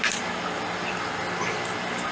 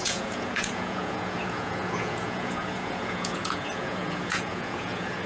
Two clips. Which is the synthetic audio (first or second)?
second